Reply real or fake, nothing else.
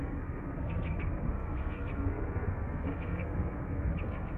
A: fake